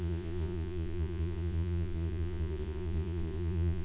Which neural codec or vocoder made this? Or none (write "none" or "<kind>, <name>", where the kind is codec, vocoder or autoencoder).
vocoder, Vocos